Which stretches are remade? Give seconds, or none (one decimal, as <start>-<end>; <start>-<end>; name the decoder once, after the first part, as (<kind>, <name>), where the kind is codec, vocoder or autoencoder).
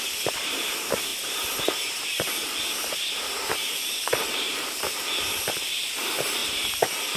0.0-6.4 (vocoder, BigVGAN v2)